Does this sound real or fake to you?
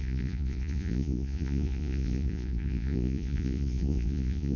fake